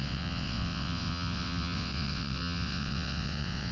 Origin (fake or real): fake